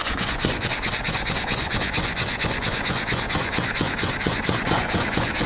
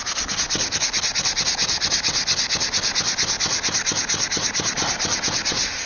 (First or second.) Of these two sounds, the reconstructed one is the first